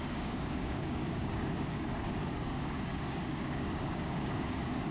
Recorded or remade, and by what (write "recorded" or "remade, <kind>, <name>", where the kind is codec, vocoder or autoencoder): remade, codec, DAC